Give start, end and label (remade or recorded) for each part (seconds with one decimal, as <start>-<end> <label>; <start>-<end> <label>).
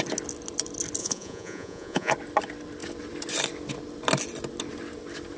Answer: 0.0-1.0 recorded; 1.0-2.1 remade; 2.1-5.4 recorded